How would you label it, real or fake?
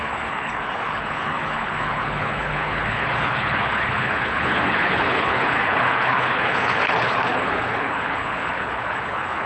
fake